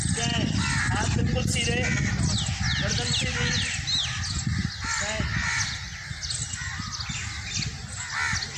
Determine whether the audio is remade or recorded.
recorded